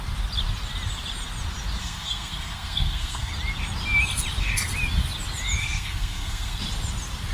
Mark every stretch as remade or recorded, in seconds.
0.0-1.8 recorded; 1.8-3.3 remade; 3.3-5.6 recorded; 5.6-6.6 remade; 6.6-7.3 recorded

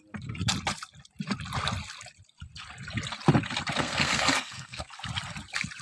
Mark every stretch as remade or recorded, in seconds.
0.0-3.8 recorded; 3.8-4.9 remade; 4.9-5.8 recorded

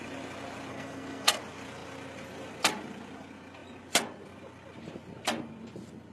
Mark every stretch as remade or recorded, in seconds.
0.0-0.7 recorded; 0.7-1.4 remade; 1.4-6.1 recorded

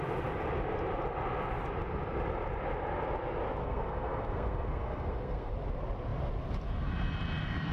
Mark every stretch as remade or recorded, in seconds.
0.0-3.6 recorded; 3.6-5.5 remade; 5.5-7.7 recorded

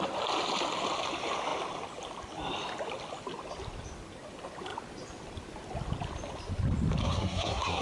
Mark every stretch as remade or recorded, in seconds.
0.0-7.0 recorded; 7.0-7.8 remade

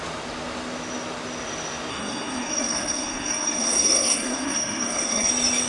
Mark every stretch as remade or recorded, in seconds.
0.0-1.9 recorded; 1.9-5.3 remade; 5.3-5.7 recorded

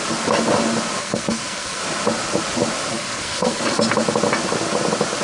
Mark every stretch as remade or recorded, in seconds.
0.0-1.0 recorded; 1.0-1.8 remade; 1.8-2.9 recorded; 2.9-3.6 remade; 3.6-5.2 recorded

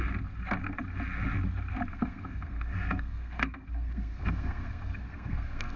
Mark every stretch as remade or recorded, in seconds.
0.0-1.9 recorded; 1.9-5.8 remade